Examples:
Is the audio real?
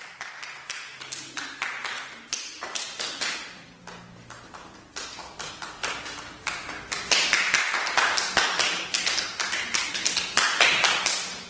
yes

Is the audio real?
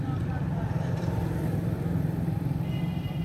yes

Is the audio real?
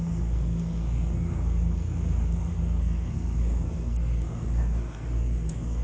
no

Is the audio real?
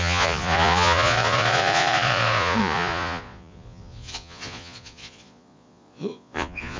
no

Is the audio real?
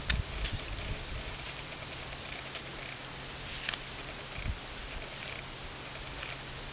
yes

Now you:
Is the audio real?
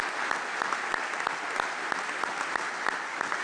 yes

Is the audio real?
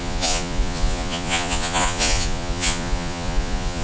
no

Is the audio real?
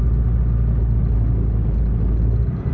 yes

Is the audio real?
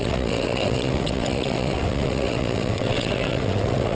no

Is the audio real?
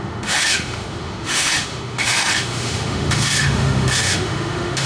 no